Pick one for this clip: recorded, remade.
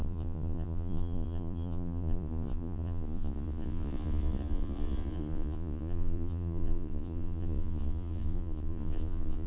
remade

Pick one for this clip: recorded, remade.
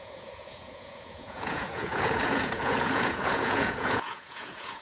remade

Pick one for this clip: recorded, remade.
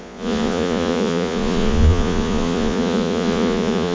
remade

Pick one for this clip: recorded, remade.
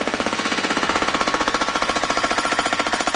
remade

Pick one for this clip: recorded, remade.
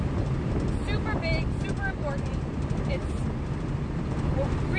recorded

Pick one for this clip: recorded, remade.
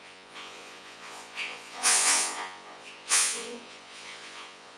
remade